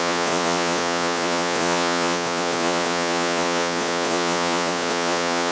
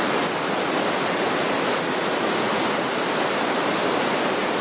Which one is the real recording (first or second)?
second